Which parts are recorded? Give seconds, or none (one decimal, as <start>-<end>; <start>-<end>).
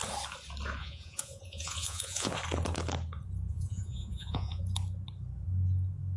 0.0-0.8; 2.3-3.5; 4.6-6.2